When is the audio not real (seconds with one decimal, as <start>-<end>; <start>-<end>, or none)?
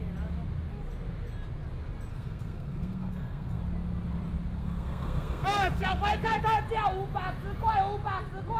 2.1-3.6; 4.6-6.4